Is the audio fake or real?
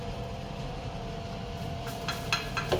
real